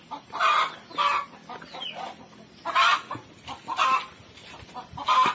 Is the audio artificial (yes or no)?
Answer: no